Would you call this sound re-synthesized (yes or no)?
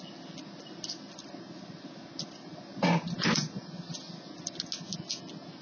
no